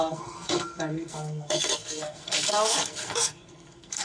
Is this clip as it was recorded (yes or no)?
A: no